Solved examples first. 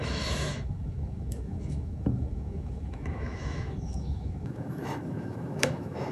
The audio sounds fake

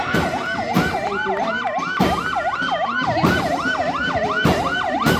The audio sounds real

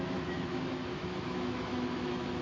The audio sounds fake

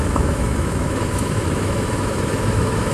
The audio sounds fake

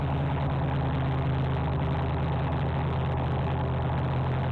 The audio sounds real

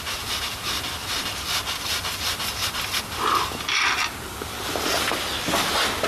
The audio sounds real